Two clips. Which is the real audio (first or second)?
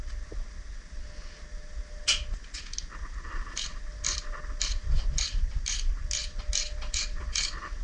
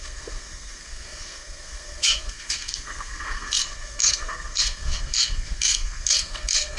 first